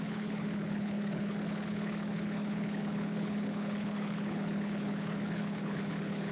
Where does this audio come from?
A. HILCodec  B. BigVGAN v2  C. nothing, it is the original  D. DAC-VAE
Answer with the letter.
A